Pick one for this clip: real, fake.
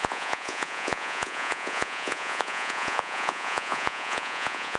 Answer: fake